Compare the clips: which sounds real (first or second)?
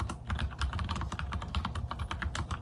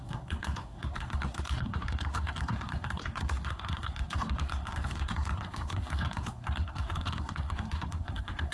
first